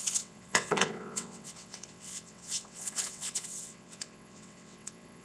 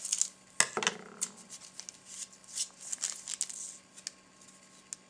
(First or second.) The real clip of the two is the second